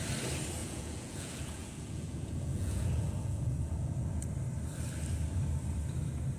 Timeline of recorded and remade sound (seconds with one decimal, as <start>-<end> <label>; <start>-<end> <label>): 0.0-0.6 recorded; 0.6-4.2 remade; 4.2-6.4 recorded

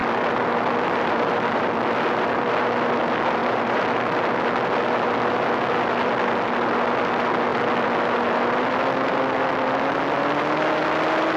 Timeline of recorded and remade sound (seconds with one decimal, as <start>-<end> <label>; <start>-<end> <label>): 0.0-2.5 remade; 2.5-3.4 recorded; 3.4-3.9 remade; 3.9-11.4 recorded

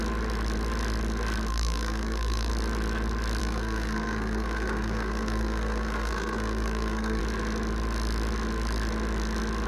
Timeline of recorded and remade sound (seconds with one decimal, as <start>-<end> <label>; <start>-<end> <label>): 0.0-1.5 recorded; 1.5-2.5 remade; 2.5-3.4 recorded; 3.4-7.2 remade; 7.2-9.7 recorded

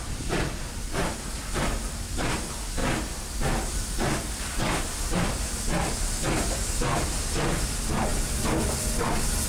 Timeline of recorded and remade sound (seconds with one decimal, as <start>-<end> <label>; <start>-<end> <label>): 0.0-9.5 recorded

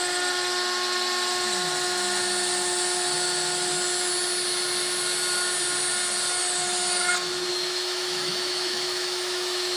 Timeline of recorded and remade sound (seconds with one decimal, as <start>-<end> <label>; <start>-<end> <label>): 0.0-7.5 recorded; 7.5-9.8 remade

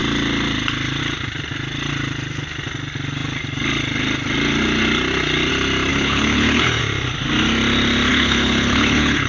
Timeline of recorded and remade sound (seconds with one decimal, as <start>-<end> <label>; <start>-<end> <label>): 0.0-5.9 recorded; 5.9-6.8 remade; 6.8-8.1 recorded; 8.1-9.3 remade

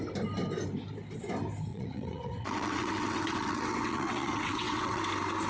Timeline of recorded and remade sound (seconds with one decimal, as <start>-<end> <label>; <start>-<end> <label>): 0.0-1.7 recorded; 1.7-5.0 remade; 5.0-5.5 recorded

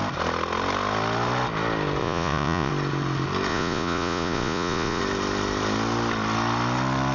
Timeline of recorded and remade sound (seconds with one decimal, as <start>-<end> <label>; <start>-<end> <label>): 0.0-2.0 recorded; 2.0-2.7 remade; 2.7-3.5 recorded; 3.5-5.0 remade; 5.0-7.1 recorded